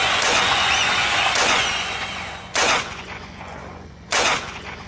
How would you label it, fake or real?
fake